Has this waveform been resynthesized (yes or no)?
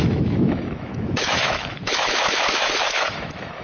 yes